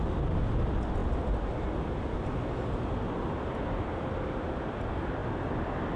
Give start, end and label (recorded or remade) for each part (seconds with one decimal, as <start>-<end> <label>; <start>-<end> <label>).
0.0-6.0 recorded